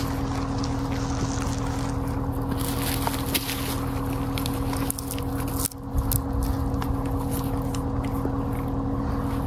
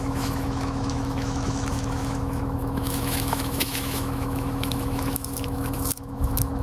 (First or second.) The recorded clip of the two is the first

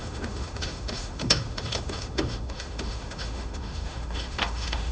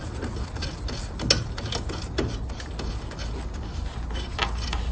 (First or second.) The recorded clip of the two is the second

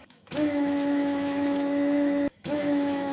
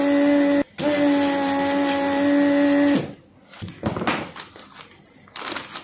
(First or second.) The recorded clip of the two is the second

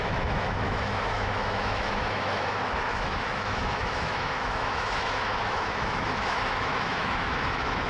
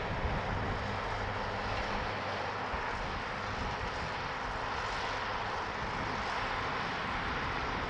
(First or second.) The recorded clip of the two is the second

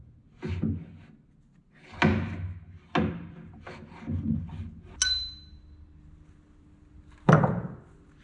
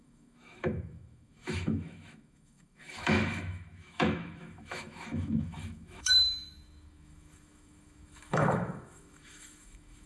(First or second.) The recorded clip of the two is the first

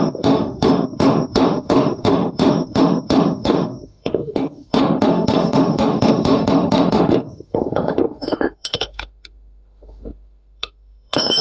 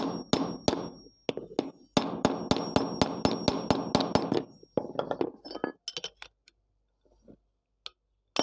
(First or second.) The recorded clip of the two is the second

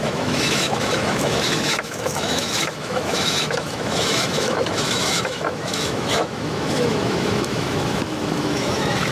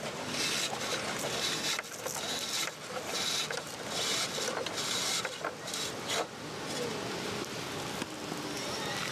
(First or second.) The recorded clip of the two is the second